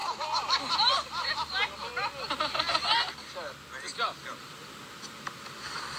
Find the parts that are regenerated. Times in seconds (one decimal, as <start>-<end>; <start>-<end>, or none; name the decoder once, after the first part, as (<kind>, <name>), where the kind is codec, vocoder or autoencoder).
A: none